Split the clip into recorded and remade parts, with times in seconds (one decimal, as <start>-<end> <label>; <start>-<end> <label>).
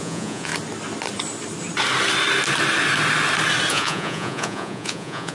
0.0-0.5 remade; 0.5-3.7 recorded; 3.7-5.3 remade